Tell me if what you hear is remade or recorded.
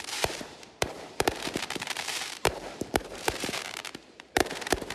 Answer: remade